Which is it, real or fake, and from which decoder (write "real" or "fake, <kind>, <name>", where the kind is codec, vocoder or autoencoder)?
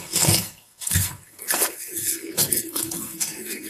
fake, codec, SNAC